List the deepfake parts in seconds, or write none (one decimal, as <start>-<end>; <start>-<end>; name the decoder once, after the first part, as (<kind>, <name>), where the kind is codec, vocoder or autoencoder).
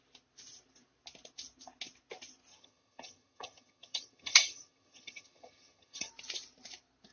2.5-6.1 (vocoder, HiFi-GAN)